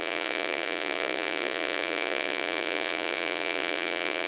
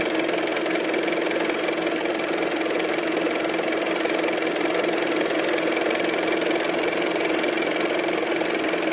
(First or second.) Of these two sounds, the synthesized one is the first